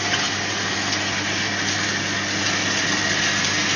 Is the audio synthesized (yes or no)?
no